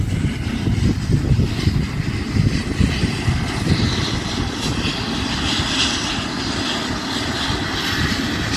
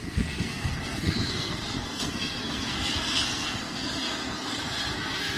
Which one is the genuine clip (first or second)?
first